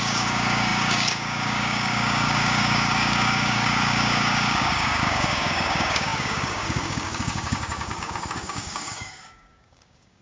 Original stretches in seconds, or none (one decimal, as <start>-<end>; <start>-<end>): none